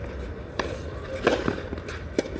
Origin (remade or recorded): remade